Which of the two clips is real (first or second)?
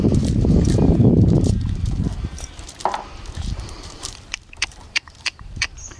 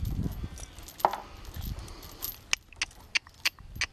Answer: second